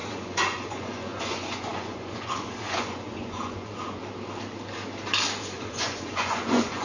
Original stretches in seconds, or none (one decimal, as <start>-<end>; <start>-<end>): 4.0-5.4